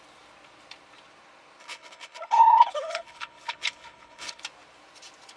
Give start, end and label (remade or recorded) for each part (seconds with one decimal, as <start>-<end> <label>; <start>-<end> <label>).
0.0-1.6 recorded; 1.6-4.4 remade; 4.4-5.4 recorded

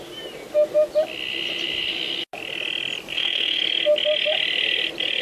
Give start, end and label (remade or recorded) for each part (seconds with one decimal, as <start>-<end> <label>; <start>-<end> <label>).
0.0-3.1 recorded; 3.1-3.6 remade; 3.6-5.2 recorded

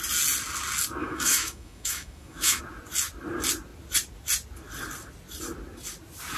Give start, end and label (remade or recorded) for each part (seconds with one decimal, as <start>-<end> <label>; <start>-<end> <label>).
0.0-1.0 recorded; 1.0-2.6 remade; 2.6-6.4 recorded

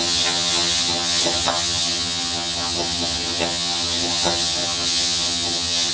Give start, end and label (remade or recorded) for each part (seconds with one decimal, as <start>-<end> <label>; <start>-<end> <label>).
0.0-5.9 remade

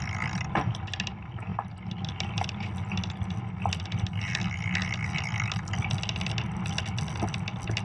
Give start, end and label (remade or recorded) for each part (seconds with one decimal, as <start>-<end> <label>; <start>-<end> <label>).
0.0-7.8 recorded

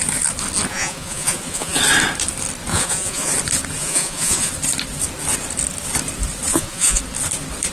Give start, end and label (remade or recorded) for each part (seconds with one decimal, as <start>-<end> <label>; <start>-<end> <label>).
0.0-0.7 recorded; 0.7-1.8 remade; 1.8-2.7 recorded; 2.7-3.3 remade; 3.3-3.8 recorded; 3.8-4.5 remade; 4.5-6.5 recorded; 6.5-7.0 remade; 7.0-7.7 recorded

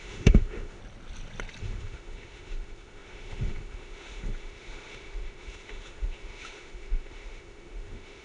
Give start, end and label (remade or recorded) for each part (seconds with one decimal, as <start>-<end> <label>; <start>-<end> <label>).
0.0-0.8 remade; 0.8-1.6 recorded; 1.6-8.2 remade

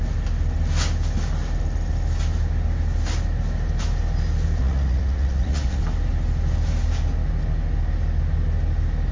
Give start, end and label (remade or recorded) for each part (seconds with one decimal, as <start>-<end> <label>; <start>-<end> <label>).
0.0-4.6 recorded; 4.6-5.8 remade; 5.8-9.1 recorded